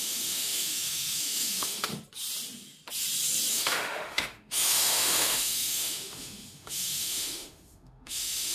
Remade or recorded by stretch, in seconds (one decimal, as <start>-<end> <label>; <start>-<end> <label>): 0.0-1.9 remade; 1.9-3.5 recorded; 3.5-8.5 remade